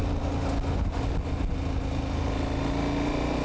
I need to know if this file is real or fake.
real